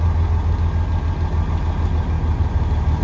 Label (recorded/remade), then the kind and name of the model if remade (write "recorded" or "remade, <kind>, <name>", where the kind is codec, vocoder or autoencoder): recorded